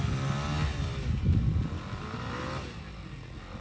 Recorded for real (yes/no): yes